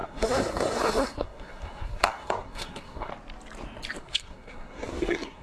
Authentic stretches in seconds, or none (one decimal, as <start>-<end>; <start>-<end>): 3.1-4.0